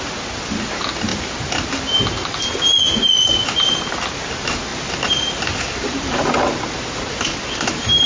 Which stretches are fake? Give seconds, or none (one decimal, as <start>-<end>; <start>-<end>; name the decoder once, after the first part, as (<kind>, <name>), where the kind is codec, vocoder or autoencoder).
4.7-6.3 (vocoder, BigVGAN v2)